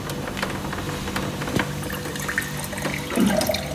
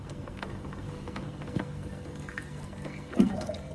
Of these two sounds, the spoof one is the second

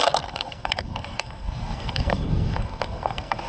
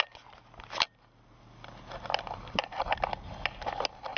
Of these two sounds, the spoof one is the first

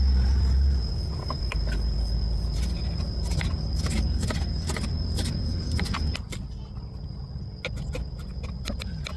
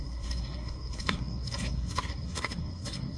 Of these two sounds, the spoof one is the second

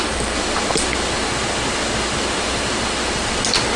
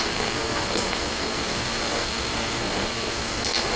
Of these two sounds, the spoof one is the second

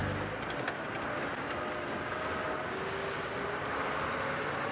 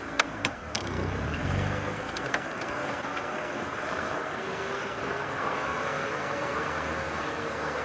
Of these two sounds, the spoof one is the second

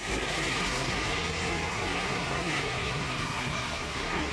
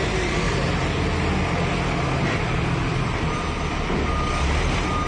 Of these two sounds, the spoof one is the first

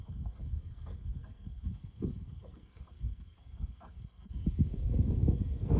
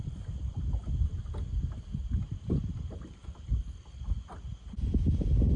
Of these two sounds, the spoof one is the first